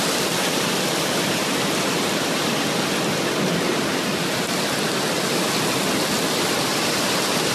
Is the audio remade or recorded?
recorded